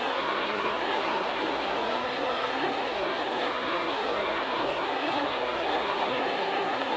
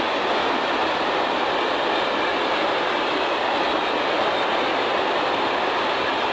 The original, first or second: second